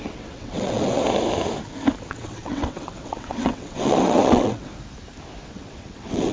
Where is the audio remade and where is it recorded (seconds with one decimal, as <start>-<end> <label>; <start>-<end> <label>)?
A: 0.0-1.0 remade; 1.0-2.1 recorded; 2.1-4.7 remade; 4.7-5.5 recorded; 5.5-6.3 remade